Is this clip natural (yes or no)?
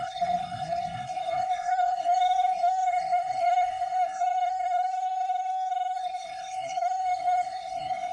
no